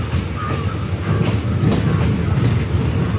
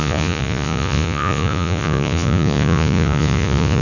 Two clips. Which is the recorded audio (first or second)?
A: first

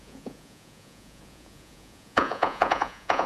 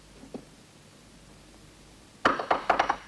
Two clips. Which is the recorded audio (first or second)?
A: second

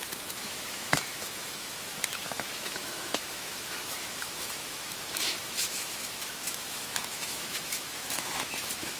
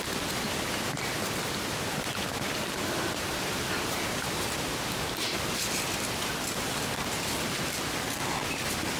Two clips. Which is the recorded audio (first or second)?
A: second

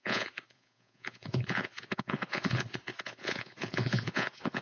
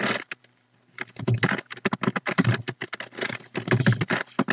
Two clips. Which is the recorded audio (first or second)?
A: second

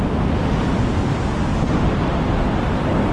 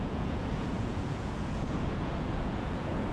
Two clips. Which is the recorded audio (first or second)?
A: first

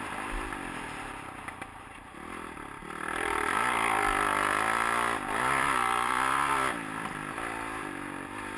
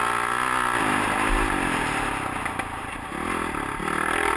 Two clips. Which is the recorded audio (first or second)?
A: second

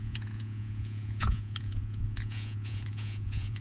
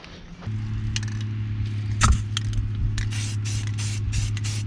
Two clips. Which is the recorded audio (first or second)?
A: second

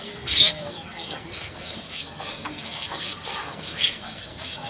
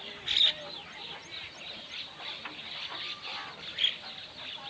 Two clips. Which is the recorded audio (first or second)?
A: second